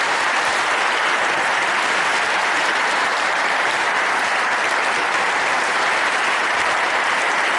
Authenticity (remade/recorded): remade